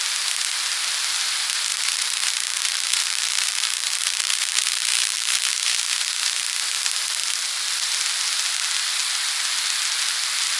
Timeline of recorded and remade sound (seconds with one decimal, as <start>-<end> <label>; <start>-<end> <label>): 0.0-1.7 recorded; 1.7-5.5 remade; 5.5-10.6 recorded